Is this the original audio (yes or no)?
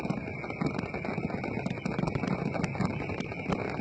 yes